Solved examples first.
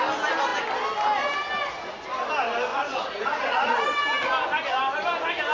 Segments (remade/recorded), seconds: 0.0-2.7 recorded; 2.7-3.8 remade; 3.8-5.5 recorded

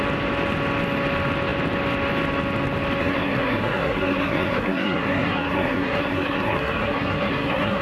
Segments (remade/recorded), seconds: 0.0-3.0 recorded; 3.0-7.8 remade